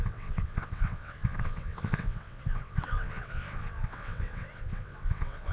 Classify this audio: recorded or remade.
remade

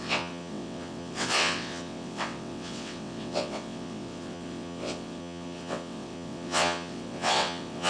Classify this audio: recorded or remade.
remade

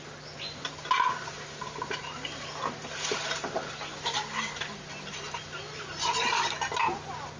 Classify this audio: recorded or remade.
recorded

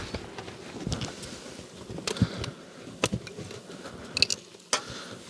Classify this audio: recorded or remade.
recorded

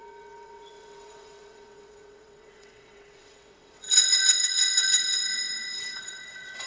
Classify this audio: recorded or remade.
remade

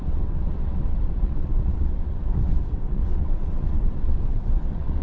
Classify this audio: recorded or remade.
remade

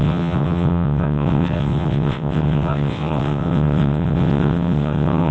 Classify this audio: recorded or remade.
remade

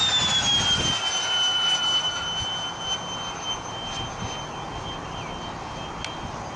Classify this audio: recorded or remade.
recorded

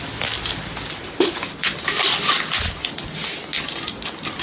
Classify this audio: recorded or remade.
recorded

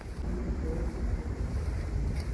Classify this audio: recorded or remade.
recorded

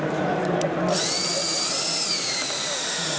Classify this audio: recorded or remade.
recorded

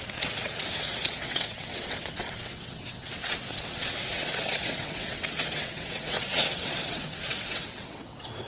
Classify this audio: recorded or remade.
remade